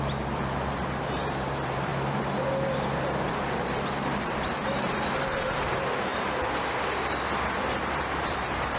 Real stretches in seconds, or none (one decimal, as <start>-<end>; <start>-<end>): 1.9-3.3; 6.1-7.6